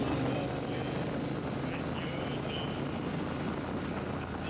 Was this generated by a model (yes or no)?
no